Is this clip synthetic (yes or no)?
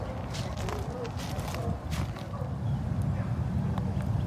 no